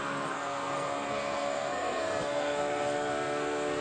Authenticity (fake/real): fake